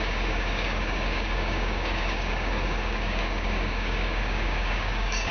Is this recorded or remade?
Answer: remade